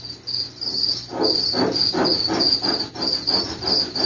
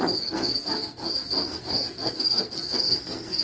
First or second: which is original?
first